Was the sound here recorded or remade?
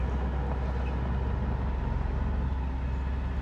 recorded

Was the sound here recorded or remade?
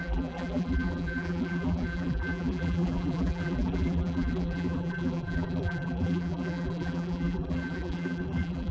remade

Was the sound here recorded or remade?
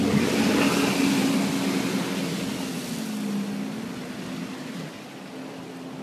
recorded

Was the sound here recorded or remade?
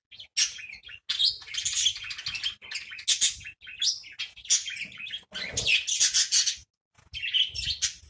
recorded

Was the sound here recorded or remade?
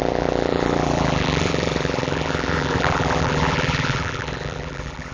remade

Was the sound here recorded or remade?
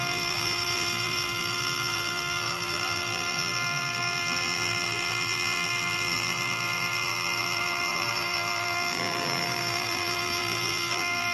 remade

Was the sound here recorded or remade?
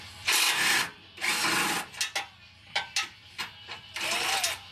recorded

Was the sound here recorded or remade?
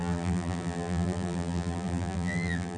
remade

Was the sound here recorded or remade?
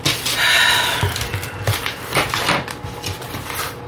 remade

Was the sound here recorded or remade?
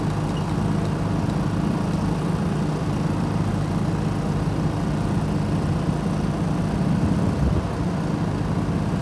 recorded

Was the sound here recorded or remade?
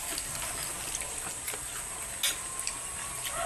recorded